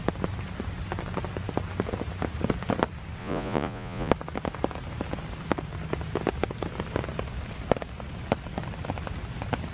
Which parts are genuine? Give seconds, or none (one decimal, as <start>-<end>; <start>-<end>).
0.0-3.2; 4.1-9.7